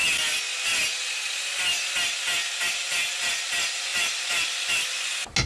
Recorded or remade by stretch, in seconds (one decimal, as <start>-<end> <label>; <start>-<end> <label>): 0.0-3.9 recorded; 3.9-4.7 remade; 4.7-5.5 recorded